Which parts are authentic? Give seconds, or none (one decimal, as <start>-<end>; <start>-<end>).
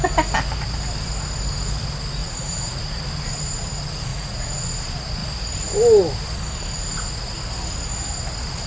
0.0-2.2; 2.8-4.1; 4.8-8.7